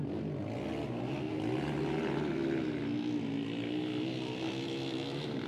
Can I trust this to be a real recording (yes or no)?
yes